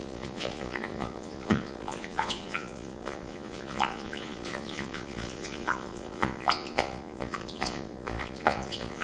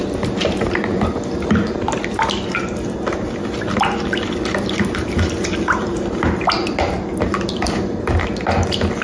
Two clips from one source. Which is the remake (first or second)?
first